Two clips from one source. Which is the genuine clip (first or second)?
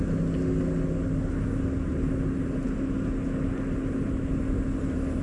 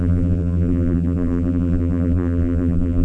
first